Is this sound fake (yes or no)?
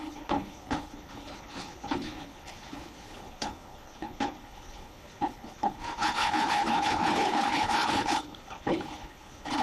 yes